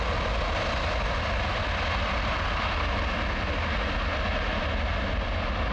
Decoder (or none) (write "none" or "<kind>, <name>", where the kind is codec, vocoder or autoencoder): none